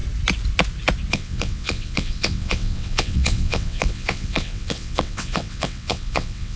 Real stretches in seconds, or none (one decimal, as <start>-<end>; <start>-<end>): 0.0-1.1